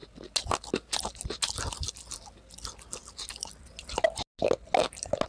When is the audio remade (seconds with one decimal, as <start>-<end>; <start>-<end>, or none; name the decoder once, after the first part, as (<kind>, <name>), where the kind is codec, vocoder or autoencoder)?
none